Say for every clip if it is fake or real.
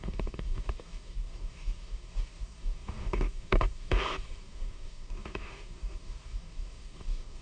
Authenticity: fake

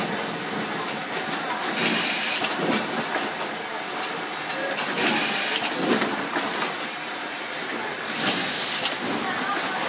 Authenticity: real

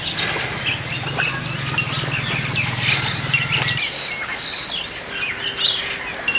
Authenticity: real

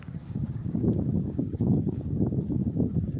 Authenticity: fake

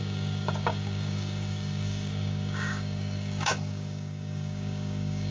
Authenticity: fake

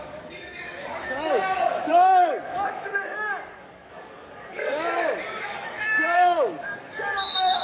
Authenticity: fake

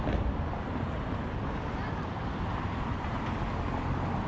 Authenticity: real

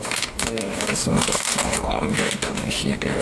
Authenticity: fake